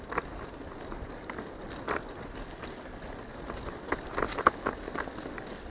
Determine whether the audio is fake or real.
real